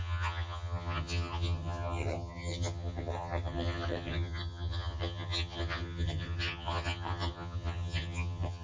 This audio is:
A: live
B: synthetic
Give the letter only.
B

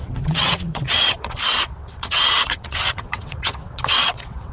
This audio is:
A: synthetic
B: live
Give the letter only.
A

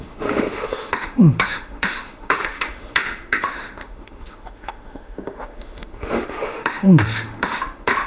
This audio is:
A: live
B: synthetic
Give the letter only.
B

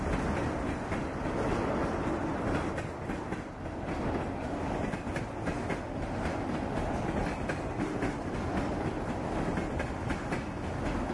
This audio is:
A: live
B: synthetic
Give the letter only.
A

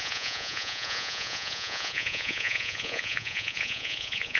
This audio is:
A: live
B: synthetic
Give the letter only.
B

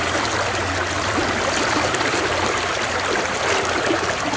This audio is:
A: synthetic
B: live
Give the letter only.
B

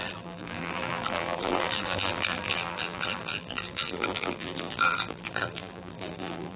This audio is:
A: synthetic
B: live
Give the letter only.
A